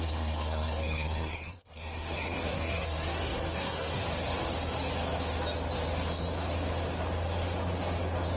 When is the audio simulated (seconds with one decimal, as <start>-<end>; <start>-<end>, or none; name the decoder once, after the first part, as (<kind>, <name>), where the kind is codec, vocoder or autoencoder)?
0.0-4.0 (codec, SNAC)